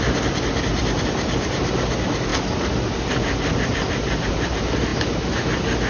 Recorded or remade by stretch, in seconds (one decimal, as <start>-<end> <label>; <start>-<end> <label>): 0.0-5.9 recorded